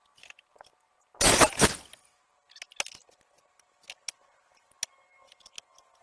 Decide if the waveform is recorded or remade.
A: recorded